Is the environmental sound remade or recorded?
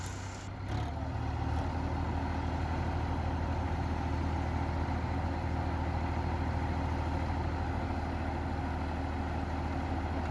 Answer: recorded